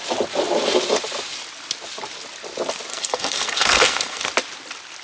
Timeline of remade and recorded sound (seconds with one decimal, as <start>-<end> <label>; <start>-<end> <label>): 0.0-2.9 recorded; 2.9-4.2 remade; 4.2-5.0 recorded